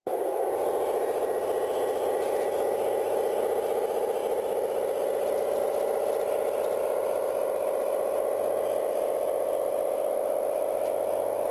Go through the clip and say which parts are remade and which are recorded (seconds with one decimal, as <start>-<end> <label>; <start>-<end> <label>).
0.0-0.5 remade; 0.5-11.5 recorded